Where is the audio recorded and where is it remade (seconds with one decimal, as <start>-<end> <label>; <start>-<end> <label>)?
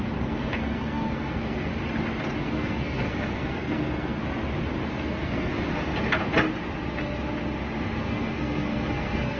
0.0-1.7 remade; 1.7-2.4 recorded; 2.4-4.2 remade; 4.2-4.9 recorded; 4.9-5.5 remade; 5.5-8.0 recorded; 8.0-9.4 remade